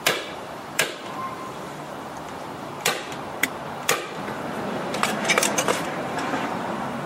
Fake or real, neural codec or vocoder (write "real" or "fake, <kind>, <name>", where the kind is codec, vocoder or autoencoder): fake, vocoder, BigVGAN v2